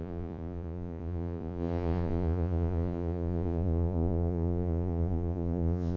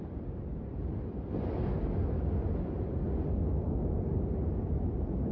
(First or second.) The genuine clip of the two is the second